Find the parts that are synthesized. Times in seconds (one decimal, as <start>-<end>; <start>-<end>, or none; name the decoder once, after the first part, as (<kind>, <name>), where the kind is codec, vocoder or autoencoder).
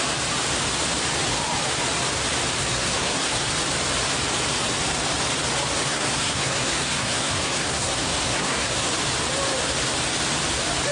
2.6-3.5 (codec, SNAC); 5.9-8.9